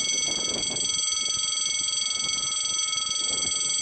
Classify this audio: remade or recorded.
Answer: recorded